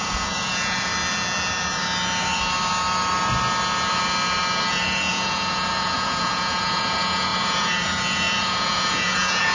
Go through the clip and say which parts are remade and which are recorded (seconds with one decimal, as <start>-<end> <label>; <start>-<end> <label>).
0.0-0.9 remade; 0.9-4.7 recorded; 4.7-9.5 remade